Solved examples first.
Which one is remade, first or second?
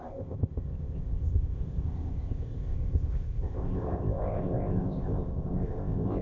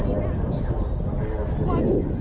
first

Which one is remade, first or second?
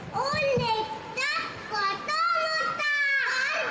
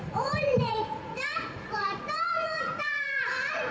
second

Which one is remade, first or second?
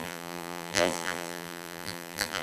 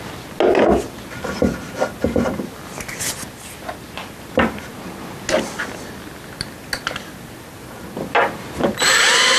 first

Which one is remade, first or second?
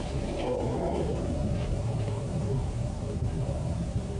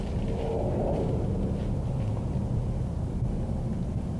first